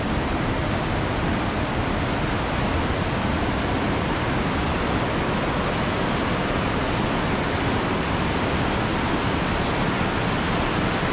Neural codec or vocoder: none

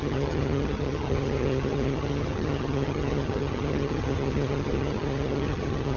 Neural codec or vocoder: vocoder, HiFi-GAN